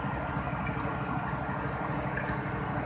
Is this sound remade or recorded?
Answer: recorded